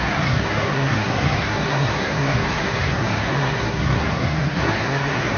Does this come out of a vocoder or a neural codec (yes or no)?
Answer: yes